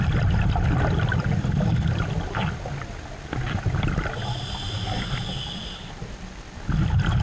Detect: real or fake real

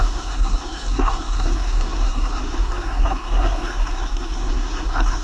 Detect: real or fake fake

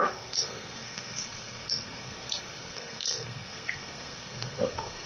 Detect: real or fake fake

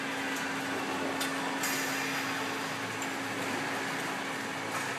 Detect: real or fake real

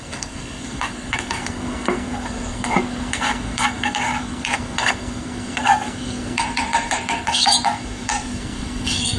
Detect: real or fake fake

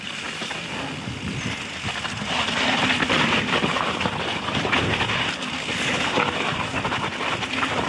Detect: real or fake real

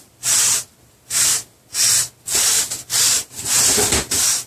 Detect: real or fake real